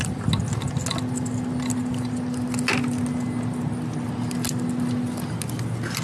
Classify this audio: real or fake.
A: real